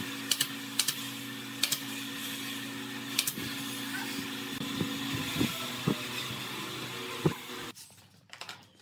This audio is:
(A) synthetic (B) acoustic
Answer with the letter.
B